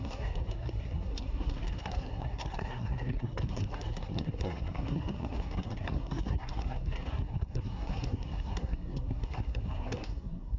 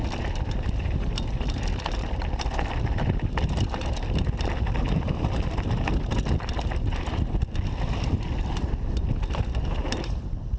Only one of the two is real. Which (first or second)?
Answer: second